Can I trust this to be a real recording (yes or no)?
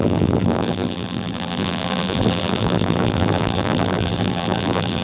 no